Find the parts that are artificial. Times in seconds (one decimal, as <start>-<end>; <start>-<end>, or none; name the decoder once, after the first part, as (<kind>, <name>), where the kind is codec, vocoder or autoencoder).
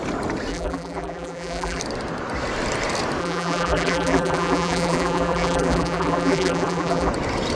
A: 0.5-1.8 (vocoder, BigVGAN v2); 3.2-7.1